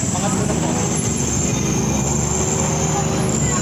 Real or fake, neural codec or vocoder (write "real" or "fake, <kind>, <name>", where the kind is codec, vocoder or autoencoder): real